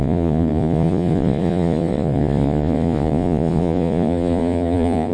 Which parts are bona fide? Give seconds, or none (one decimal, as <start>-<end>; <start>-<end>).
none